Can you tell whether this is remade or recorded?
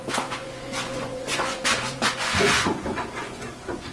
remade